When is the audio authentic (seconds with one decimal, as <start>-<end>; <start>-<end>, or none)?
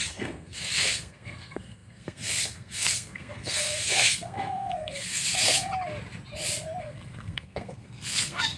5.7-6.8